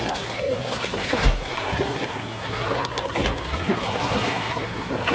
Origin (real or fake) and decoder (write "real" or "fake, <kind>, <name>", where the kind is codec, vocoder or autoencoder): fake, codec, SNAC